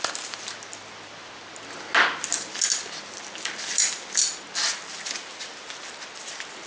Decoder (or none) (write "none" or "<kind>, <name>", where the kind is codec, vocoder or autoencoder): none